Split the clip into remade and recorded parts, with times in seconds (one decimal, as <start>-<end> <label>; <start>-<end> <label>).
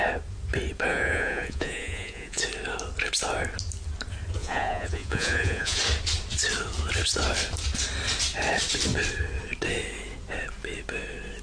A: 0.0-0.9 recorded; 0.9-2.4 remade; 2.4-4.4 recorded; 4.4-5.8 remade; 5.8-11.4 recorded